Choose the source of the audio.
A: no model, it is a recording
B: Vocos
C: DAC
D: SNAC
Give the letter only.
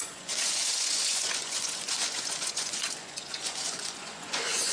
B